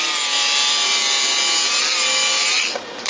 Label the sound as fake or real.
real